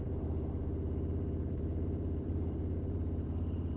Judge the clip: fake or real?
fake